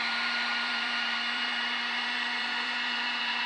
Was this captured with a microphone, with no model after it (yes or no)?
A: no